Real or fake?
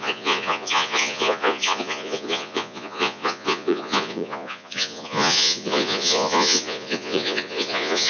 fake